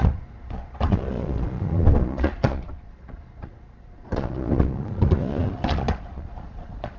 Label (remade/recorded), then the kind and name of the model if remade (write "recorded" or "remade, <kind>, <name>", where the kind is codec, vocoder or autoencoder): remade, vocoder, Vocos